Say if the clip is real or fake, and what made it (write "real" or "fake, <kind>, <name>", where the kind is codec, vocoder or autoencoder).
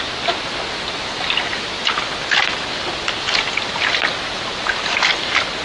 real